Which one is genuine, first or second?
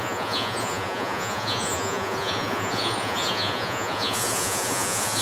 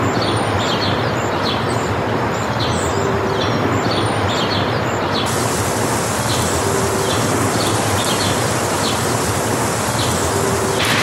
second